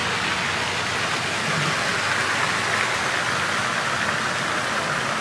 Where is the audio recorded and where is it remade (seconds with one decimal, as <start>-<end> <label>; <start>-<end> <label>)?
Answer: 0.0-5.2 recorded